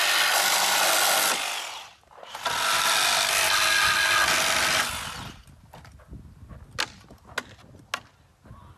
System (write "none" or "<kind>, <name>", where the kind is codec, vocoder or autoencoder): none